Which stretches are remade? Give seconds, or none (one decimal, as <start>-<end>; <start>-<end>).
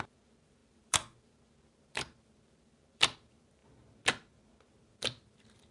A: 0.0-3.6; 4.9-5.7